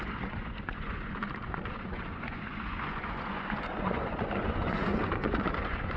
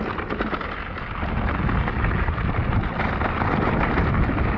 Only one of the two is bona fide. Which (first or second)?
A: second